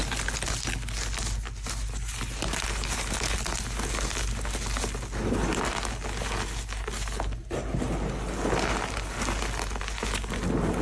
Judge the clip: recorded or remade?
recorded